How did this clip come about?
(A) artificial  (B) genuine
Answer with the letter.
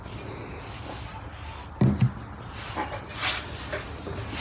B